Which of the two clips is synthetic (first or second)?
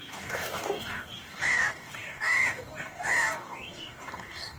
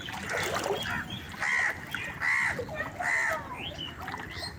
first